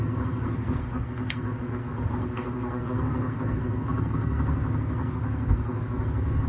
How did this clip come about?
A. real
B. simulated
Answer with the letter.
B